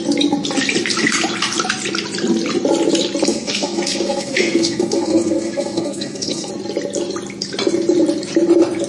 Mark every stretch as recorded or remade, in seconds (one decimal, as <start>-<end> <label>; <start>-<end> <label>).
0.0-3.3 recorded; 3.3-6.5 remade; 6.5-8.9 recorded